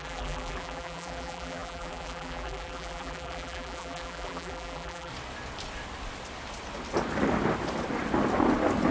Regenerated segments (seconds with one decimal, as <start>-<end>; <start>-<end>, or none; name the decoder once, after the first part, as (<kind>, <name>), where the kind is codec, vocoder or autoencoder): 0.0-5.1 (vocoder, BigVGAN v2)